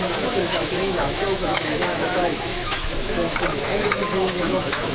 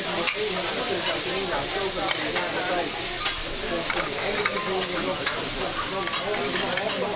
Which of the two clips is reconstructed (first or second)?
first